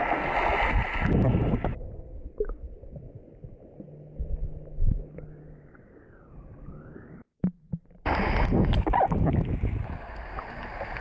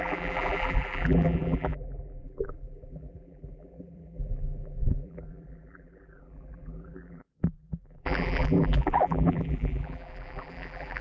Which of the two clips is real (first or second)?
first